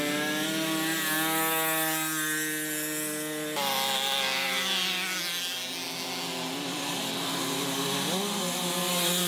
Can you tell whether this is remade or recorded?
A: recorded